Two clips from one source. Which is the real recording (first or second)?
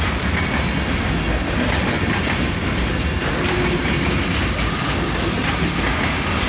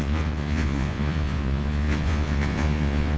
first